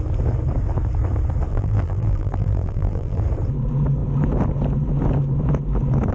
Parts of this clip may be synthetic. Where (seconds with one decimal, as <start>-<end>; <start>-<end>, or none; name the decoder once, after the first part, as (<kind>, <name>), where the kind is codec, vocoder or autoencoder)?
1.5-3.2 (vocoder, BigVGAN v2)